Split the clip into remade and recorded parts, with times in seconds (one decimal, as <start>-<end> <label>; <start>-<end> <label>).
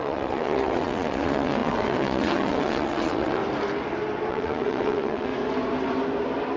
0.0-3.4 remade; 3.4-4.3 recorded; 4.3-5.3 remade; 5.3-6.6 recorded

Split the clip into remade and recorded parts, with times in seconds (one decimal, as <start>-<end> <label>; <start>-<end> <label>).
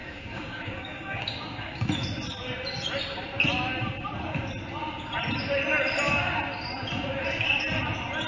0.0-1.9 remade; 1.9-8.3 recorded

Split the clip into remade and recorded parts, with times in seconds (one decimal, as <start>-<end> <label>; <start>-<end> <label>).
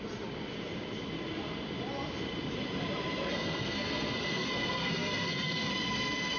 0.0-3.3 recorded; 3.3-5.7 remade; 5.7-6.4 recorded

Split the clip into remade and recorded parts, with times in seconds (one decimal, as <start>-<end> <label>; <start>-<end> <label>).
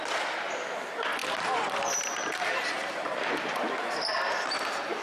0.0-5.0 recorded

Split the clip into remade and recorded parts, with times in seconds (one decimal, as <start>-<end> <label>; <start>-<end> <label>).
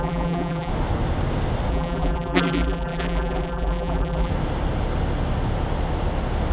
0.0-0.7 remade; 0.7-1.7 recorded; 1.7-4.3 remade; 4.3-6.5 recorded